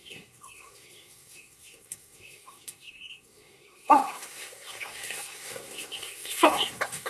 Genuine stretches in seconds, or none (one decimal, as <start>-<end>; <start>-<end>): none